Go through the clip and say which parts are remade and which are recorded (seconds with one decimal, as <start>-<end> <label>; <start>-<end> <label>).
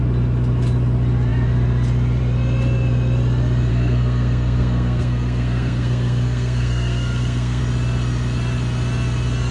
0.0-3.7 recorded; 3.7-7.6 remade; 7.6-9.5 recorded